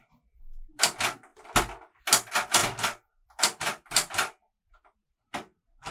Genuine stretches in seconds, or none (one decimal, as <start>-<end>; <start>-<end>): 0.0-5.9